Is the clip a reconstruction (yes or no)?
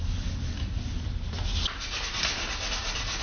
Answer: no